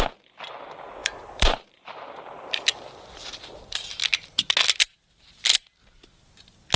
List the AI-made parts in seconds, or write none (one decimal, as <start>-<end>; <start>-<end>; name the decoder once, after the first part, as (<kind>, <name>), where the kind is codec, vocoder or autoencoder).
1.0-2.9 (vocoder, BigVGAN v2)